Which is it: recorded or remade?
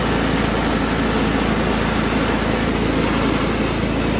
recorded